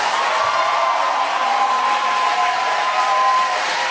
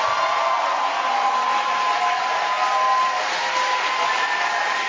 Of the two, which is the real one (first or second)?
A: second